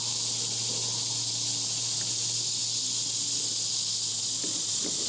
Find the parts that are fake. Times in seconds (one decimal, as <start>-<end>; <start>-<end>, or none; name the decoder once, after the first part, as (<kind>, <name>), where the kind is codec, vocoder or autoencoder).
none